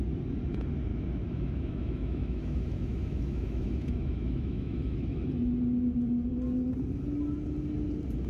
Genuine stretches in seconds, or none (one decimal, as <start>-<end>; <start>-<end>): 0.0-0.9; 5.3-8.3